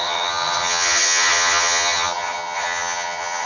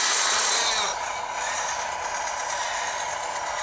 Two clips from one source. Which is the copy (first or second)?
first